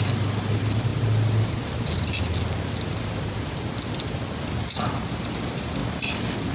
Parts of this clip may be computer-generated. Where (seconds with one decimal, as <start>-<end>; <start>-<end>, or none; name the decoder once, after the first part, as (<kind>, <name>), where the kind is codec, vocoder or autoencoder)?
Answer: none